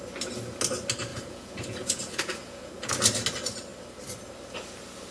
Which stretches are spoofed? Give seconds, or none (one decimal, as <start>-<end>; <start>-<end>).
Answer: 1.1-2.7